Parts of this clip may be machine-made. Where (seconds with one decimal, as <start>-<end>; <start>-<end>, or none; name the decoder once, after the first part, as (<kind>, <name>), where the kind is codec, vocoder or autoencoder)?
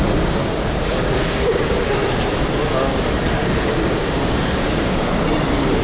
0.4-1.9 (codec, DAC); 3.4-5.1